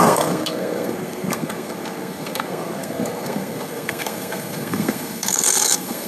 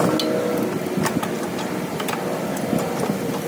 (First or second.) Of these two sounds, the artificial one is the first